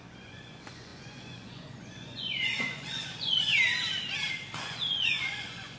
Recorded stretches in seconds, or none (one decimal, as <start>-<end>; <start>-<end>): 3.5-4.6